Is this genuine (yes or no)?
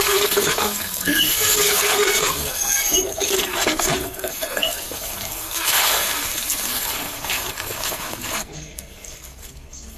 no